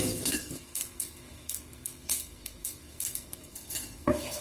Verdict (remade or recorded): remade